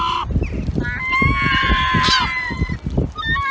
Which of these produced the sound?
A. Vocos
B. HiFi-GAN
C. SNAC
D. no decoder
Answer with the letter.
D